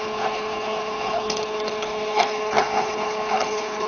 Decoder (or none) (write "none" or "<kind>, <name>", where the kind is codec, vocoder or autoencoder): codec, HILCodec